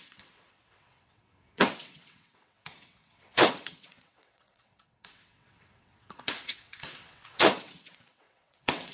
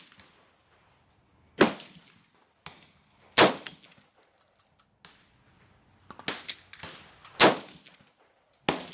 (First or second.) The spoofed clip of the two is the first